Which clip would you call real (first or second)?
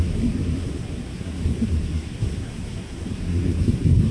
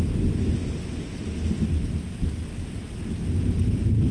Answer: second